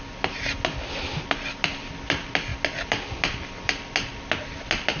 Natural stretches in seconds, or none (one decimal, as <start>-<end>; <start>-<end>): 0.0-5.0

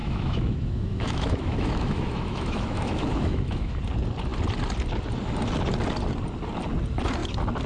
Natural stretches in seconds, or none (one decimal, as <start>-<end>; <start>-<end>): 3.8-7.7

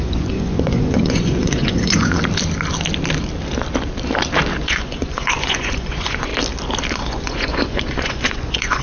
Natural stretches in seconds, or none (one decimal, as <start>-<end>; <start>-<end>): 2.2-4.6; 6.3-6.9

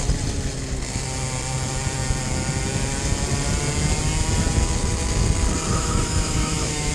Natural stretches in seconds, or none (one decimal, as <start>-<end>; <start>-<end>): 0.0-5.7